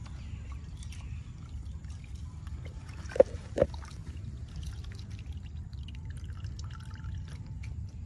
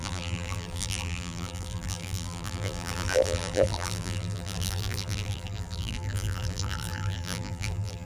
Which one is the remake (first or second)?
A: second